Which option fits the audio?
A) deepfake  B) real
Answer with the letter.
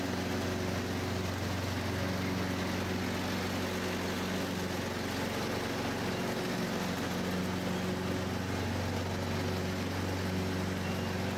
B